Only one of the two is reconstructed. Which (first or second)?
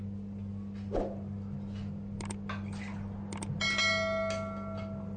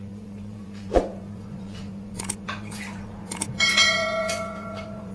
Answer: second